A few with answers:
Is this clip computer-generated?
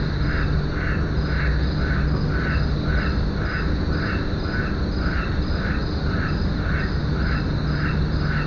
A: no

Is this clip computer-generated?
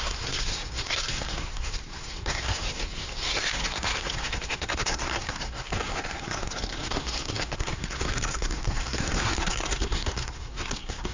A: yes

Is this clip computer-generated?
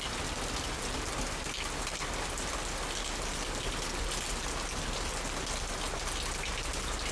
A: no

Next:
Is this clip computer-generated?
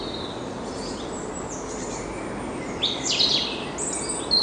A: no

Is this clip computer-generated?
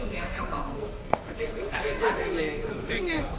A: yes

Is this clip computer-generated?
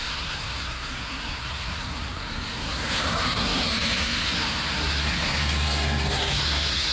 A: yes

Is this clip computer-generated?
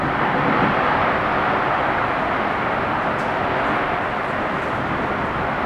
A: no